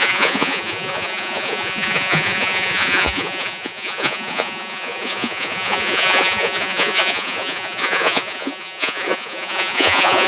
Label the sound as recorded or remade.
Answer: remade